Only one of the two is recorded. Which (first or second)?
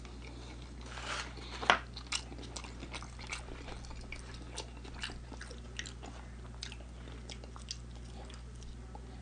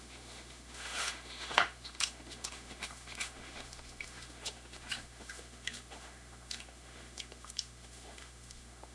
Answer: first